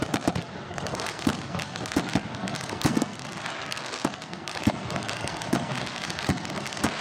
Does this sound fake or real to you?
fake